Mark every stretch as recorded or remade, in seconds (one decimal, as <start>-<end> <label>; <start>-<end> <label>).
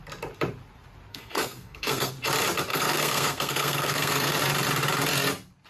0.0-1.1 recorded; 1.1-2.1 remade; 2.1-2.7 recorded; 2.7-4.3 remade; 4.3-5.7 recorded